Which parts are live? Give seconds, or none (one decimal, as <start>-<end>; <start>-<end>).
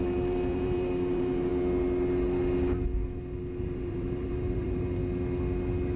1.5-3.6; 5.0-6.0